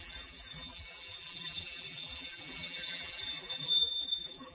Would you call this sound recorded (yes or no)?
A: no